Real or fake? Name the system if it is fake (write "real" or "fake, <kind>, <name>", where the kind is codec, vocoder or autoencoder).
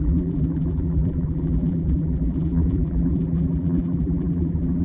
fake, vocoder, BigVGAN v2